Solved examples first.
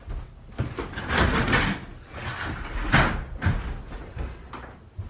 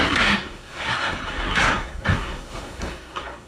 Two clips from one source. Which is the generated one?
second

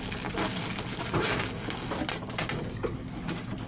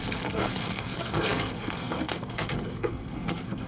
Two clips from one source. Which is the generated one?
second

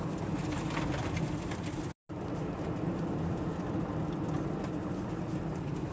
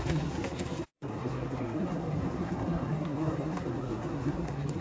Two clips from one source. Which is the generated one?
second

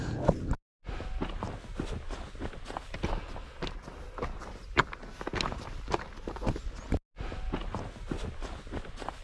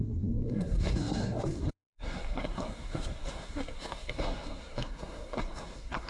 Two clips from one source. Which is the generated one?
second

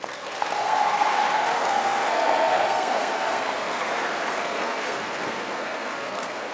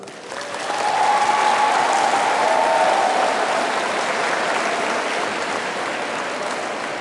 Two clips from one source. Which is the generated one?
first